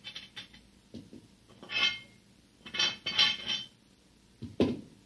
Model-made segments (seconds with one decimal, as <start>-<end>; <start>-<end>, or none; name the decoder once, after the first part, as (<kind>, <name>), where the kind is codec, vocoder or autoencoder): none